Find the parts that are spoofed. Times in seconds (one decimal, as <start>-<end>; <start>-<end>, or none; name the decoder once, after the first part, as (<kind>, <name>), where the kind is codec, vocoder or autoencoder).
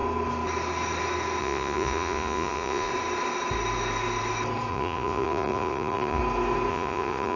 1.4-2.9 (vocoder, Vocos); 4.7-6.2; 6.7-7.4